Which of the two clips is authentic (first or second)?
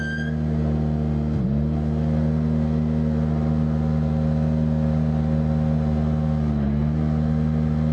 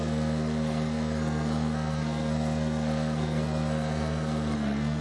first